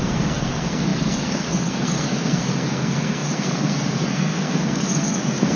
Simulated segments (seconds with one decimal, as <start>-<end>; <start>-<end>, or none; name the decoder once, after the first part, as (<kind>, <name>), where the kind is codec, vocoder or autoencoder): 0.0-5.6 (codec, SNAC)